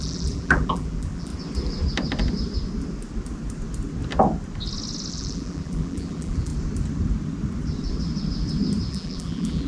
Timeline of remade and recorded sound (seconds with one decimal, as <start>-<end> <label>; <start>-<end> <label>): 0.0-1.3 remade; 1.3-5.1 recorded; 5.1-6.5 remade; 6.5-8.9 recorded; 8.9-9.7 remade

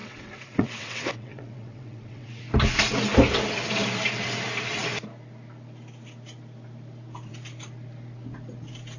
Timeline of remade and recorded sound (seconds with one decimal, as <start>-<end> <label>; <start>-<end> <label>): 0.0-2.4 remade; 2.4-9.0 recorded